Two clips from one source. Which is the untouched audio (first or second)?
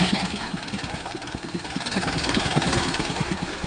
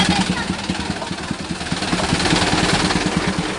second